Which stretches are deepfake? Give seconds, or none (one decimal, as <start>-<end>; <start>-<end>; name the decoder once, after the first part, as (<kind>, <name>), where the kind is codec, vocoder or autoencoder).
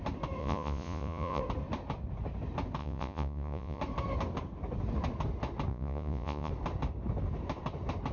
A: 0.4-1.4 (vocoder, Vocos); 2.8-3.8; 5.7-6.5